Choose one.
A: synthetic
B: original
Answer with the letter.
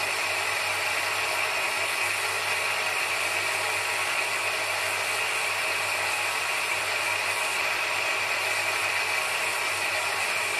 B